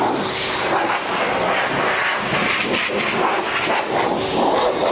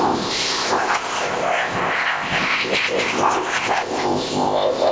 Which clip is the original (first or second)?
first